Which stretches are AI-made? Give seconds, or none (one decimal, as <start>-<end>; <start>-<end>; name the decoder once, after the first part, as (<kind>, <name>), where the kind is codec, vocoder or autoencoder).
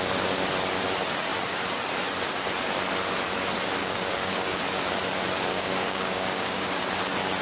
3.8-4.6 (codec, DAC); 5.5-6.8